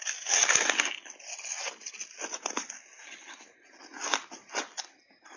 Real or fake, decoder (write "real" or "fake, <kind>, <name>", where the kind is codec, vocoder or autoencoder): real